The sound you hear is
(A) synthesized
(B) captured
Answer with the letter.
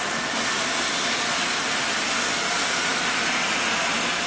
B